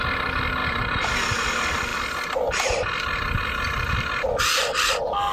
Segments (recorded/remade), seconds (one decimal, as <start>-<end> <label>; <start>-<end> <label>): 0.0-0.6 recorded; 0.6-1.1 remade; 1.1-5.3 recorded